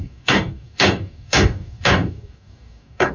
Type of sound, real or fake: fake